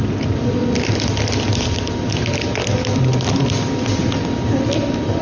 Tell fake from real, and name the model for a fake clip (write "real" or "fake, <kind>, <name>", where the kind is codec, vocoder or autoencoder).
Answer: real